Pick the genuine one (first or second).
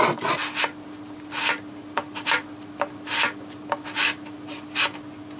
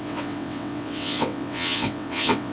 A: first